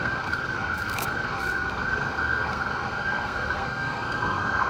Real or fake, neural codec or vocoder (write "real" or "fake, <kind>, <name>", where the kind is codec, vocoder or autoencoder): fake, codec, SNAC